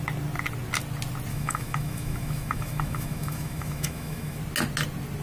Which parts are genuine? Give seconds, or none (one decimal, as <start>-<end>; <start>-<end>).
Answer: 0.0-1.3; 4.4-5.2